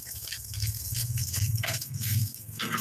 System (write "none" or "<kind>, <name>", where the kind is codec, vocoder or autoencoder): codec, SNAC